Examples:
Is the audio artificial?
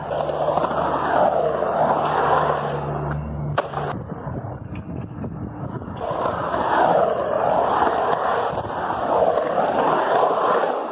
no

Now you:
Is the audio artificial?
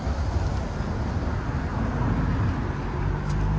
no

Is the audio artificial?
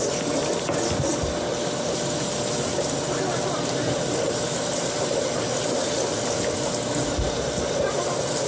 no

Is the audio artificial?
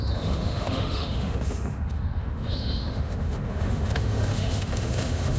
yes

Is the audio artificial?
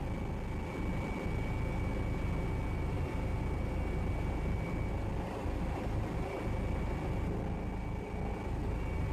no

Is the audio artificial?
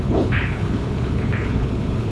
yes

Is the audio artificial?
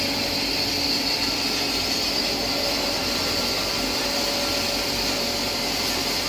no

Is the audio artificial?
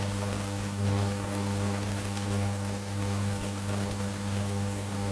yes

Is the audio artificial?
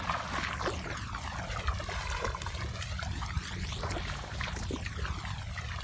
no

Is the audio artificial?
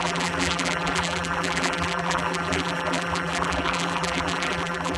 yes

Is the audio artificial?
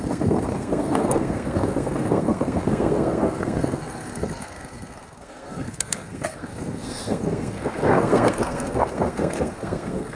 yes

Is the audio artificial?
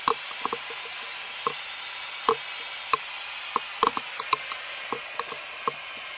no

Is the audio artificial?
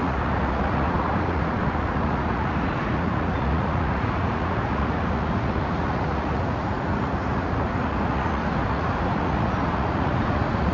yes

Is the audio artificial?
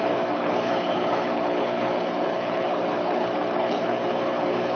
yes